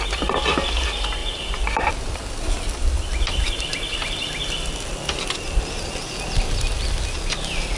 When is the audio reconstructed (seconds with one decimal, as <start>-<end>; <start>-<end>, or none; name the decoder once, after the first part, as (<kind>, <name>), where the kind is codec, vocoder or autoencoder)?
1.2-1.9 (vocoder, BigVGAN v2)